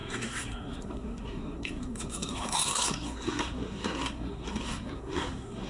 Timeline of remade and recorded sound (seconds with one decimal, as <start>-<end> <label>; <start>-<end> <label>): 0.0-5.7 remade